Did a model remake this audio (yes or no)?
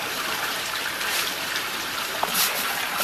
yes